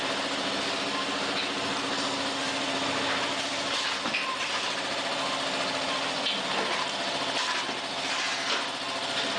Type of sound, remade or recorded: recorded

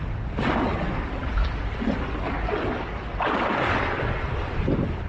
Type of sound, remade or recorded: recorded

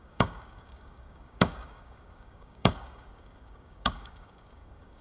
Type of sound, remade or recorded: remade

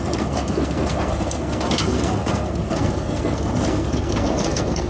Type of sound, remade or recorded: remade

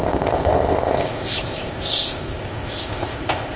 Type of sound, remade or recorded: remade